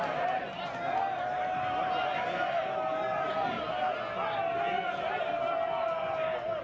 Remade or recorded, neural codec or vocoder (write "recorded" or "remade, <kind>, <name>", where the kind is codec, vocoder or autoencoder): recorded